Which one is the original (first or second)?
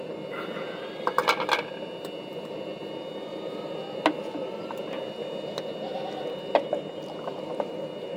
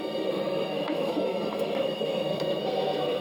first